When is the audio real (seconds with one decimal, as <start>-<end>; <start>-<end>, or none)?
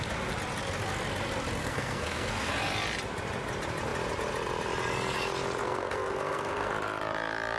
0.0-1.6; 2.5-5.6; 6.7-7.6